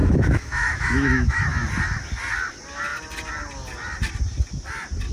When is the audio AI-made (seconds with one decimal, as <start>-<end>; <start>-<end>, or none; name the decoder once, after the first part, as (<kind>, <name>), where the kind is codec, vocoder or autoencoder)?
0.0-1.4 (autoencoder, DAC-VAE)